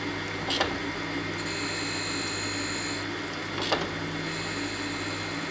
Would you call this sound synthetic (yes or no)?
no